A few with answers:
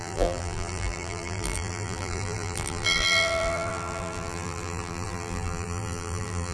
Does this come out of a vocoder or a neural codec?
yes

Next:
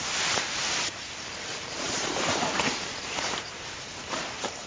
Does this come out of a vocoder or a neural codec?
yes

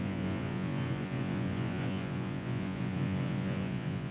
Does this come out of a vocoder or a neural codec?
yes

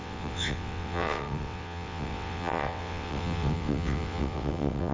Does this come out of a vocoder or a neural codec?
yes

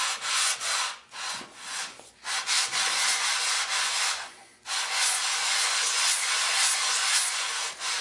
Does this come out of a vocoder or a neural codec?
yes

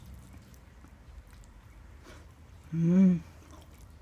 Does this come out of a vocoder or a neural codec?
yes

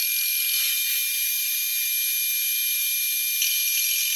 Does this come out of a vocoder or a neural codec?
no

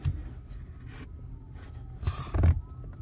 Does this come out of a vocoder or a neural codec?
no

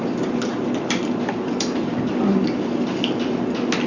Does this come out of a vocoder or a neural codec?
no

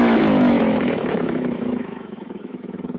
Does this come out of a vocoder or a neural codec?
yes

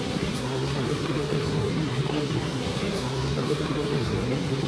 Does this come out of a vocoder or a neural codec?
yes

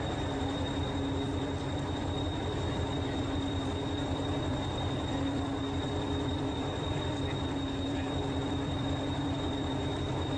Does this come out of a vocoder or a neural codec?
yes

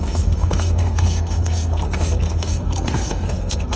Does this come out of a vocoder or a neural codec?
yes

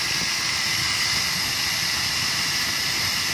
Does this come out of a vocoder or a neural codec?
no